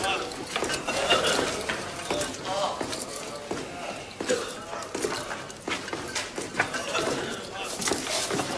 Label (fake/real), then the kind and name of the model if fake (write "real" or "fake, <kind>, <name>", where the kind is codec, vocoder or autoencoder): real